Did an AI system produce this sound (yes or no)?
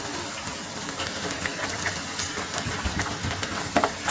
no